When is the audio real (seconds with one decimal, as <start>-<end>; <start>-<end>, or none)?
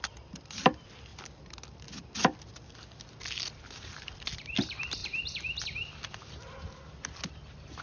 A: 0.0-7.8